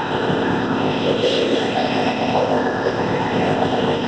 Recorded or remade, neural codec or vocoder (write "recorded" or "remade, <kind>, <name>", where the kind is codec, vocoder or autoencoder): remade, codec, ZipCodec